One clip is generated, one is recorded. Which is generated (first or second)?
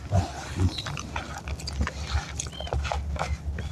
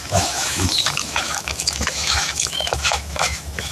second